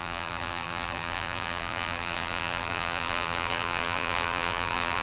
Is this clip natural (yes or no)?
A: no